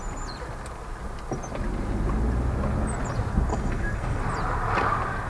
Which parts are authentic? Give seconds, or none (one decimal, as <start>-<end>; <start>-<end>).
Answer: 0.0-3.5; 4.2-5.3